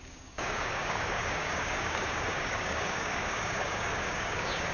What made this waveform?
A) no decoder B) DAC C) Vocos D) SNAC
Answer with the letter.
B